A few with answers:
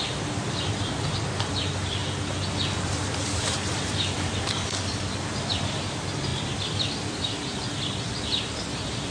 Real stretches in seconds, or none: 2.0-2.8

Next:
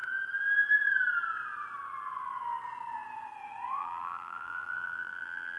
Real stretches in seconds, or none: 0.0-3.8

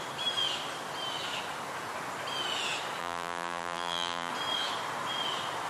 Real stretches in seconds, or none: 0.0-3.0; 4.3-5.7